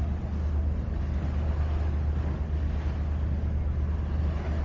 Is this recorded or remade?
recorded